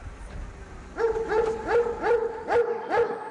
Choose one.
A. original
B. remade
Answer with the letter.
A